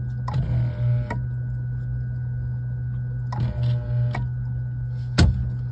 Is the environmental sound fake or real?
real